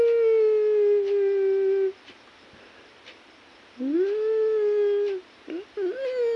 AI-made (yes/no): no